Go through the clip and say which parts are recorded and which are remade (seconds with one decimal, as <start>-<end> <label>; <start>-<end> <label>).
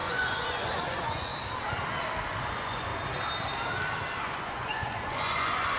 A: 0.0-1.3 remade; 1.3-2.3 recorded; 2.3-2.9 remade; 2.9-4.2 recorded; 4.2-5.8 remade